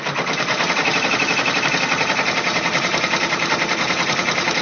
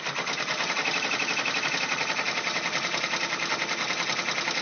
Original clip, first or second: second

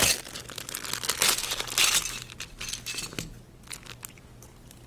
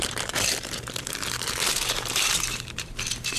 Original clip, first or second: first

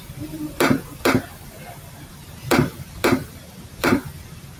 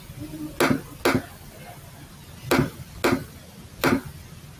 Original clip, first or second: second